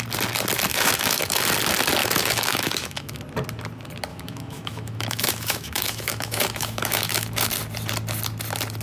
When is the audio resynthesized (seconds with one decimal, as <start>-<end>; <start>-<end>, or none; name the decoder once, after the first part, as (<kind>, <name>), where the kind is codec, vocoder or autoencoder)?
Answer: 0.7-1.4 (autoencoder, DAC-VAE); 2.0-3.2; 4.1-7.5